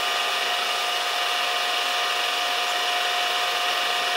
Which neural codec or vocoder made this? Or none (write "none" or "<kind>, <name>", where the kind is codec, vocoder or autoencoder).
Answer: none